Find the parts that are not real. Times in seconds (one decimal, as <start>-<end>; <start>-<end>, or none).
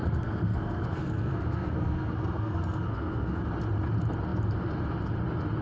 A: 0.0-3.4